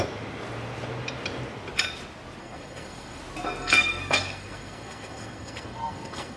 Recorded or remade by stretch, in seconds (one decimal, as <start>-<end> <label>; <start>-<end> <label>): 0.0-2.4 recorded; 2.4-3.2 remade; 3.2-3.6 recorded; 3.6-6.4 remade